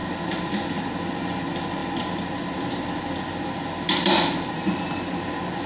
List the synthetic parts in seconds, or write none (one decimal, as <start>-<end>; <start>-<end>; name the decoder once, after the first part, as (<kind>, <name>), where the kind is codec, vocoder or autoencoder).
none